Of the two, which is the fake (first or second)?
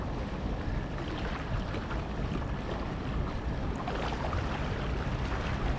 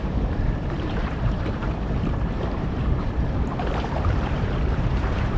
second